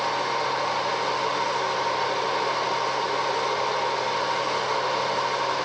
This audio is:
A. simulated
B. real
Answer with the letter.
B